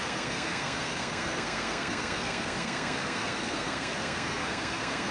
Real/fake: fake